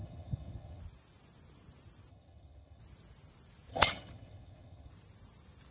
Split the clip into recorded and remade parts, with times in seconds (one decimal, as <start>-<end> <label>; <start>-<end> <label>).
0.0-0.8 remade; 0.8-2.1 recorded; 2.1-2.8 remade; 2.8-3.7 recorded; 3.7-4.9 remade; 4.9-5.7 recorded